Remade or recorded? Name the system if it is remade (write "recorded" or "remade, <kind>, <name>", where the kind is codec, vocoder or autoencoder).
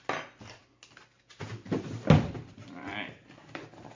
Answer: recorded